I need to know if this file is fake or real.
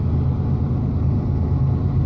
real